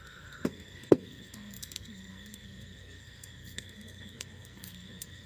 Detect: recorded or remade remade